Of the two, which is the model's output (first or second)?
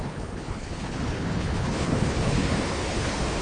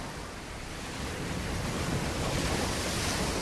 first